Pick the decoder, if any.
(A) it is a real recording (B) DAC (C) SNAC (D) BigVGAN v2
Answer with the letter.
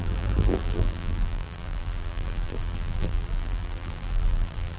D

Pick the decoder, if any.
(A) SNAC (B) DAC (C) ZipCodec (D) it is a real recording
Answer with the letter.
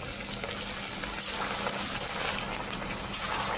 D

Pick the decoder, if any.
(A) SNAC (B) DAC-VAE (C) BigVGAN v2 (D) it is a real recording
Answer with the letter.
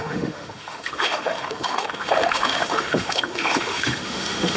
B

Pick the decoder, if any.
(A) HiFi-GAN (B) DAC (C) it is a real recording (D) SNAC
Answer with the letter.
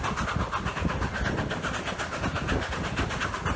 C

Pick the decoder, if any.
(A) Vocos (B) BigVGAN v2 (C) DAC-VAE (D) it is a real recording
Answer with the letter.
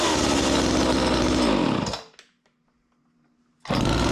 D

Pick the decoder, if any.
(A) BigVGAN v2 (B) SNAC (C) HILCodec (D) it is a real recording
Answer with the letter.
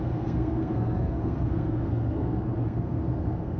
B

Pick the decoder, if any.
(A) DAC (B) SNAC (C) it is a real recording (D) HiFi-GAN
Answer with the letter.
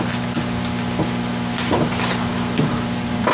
C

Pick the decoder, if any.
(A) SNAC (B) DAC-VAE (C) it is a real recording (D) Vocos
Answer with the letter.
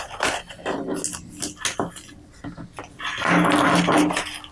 C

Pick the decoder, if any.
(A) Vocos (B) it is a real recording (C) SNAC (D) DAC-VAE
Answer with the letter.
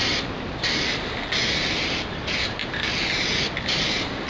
B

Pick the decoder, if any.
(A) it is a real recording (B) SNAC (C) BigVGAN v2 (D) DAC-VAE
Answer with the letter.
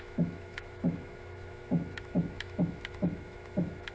D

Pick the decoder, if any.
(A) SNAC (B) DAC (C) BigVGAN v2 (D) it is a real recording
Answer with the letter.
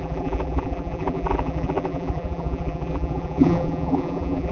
C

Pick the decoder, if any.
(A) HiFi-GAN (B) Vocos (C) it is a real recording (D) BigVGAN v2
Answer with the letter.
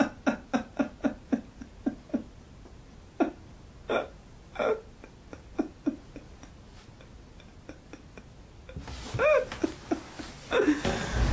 C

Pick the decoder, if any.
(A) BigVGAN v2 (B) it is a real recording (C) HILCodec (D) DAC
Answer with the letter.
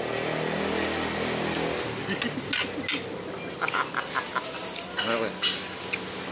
B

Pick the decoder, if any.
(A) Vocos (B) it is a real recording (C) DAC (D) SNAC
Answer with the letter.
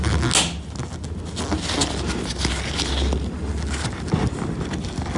B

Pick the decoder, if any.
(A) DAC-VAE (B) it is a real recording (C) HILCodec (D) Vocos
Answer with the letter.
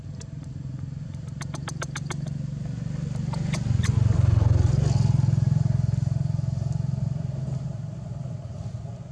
B